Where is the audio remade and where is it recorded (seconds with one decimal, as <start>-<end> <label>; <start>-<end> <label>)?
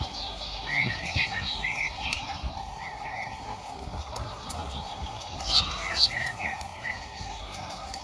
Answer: 0.0-8.0 remade